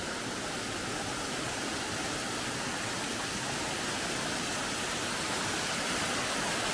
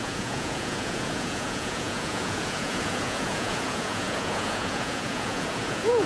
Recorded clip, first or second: first